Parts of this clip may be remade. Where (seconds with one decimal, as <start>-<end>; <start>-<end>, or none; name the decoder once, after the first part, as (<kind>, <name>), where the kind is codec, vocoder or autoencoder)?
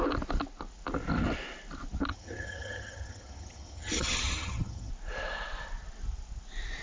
2.1-4.9 (vocoder, HiFi-GAN)